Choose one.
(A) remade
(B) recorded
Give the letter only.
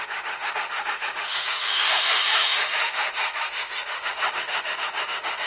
A